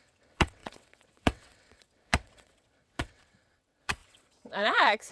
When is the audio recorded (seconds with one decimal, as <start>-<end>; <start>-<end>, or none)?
none